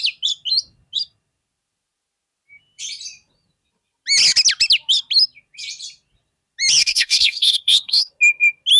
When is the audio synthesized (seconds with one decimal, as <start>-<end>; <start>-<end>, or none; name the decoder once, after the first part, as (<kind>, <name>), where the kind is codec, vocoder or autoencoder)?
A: 6.8-8.1 (codec, SNAC)